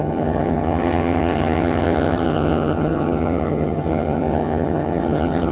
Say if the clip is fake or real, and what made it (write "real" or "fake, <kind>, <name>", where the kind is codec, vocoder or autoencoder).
fake, vocoder, HiFi-GAN